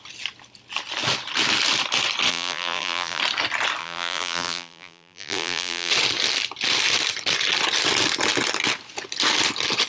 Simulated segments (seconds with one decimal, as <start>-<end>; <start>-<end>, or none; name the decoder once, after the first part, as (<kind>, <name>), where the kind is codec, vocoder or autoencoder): 2.3-3.2 (vocoder, BigVGAN v2); 3.8-5.9